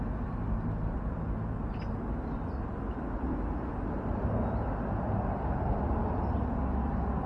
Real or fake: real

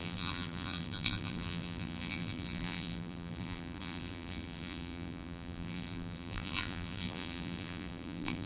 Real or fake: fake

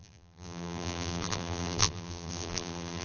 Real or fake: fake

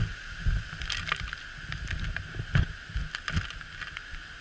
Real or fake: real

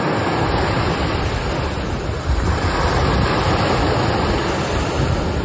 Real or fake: real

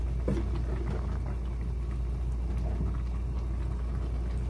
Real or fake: real